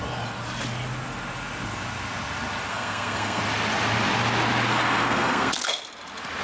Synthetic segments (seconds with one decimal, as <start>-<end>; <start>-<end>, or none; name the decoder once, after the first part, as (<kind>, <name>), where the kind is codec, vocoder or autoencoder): 2.7-3.4 (codec, SNAC); 4.7-5.5